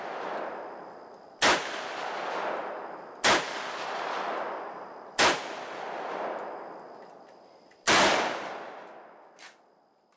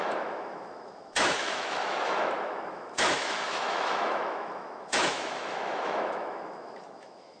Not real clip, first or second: second